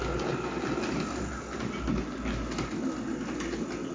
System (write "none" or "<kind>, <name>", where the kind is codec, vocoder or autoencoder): none